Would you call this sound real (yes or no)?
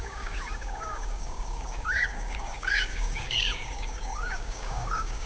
no